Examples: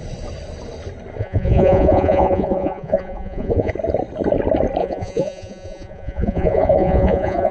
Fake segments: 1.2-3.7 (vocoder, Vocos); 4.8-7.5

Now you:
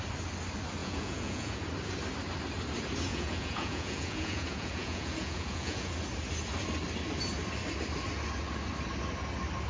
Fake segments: 0.8-1.6 (vocoder, Vocos); 3.1-5.9

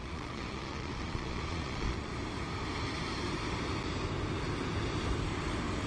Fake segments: 0.0-2.1 (vocoder, Vocos)